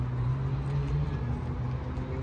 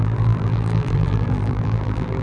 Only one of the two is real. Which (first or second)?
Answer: first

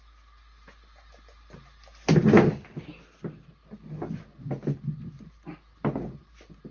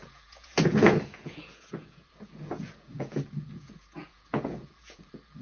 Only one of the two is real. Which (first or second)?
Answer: first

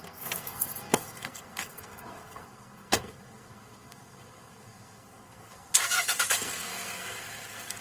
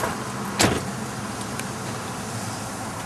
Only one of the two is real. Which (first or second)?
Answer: second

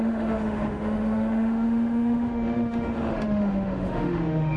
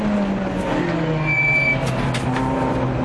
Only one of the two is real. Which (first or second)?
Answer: second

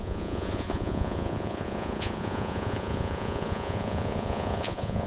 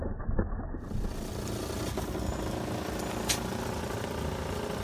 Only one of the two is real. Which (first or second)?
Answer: second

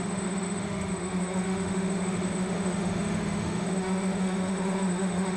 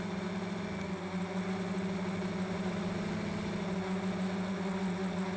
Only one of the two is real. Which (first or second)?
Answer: second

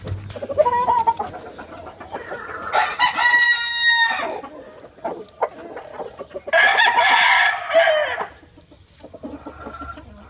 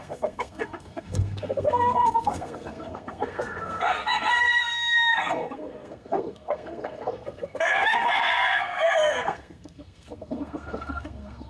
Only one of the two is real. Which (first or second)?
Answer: first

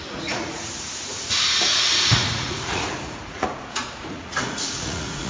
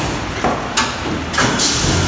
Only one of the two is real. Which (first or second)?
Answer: second